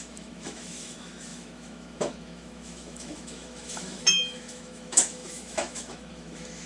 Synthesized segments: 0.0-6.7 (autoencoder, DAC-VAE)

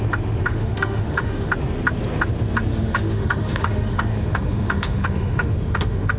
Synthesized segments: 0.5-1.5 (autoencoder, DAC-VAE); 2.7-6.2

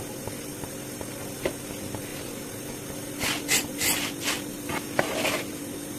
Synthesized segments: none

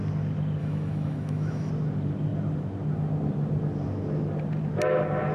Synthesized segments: 0.6-1.7 (autoencoder, DAC-VAE)